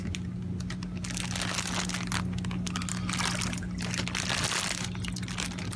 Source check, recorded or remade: recorded